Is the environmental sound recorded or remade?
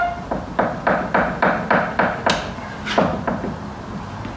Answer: recorded